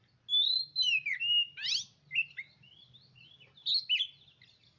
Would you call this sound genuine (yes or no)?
yes